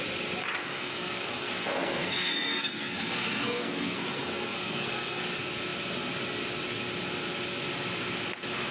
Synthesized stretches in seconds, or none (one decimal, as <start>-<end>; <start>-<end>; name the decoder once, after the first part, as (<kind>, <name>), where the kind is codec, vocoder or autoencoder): 0.6-5.2 (codec, SNAC)